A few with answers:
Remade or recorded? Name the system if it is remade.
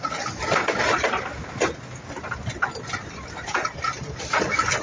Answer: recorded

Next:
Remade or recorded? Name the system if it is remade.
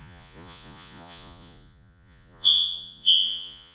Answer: remade, vocoder, Vocos